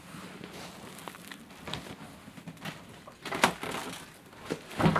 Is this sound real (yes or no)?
yes